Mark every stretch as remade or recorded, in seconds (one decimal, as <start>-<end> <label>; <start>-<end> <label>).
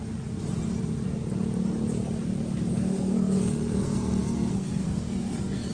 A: 0.0-2.7 recorded; 2.7-5.7 remade